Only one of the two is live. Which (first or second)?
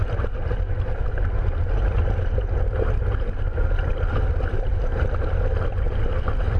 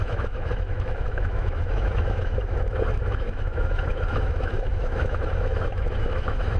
first